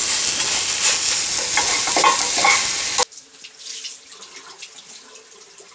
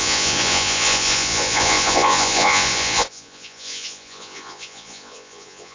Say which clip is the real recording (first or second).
first